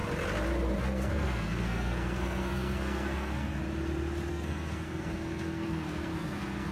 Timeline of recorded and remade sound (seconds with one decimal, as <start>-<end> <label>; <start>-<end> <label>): 0.0-0.8 recorded; 0.8-3.6 remade; 3.6-4.3 recorded; 4.3-6.7 remade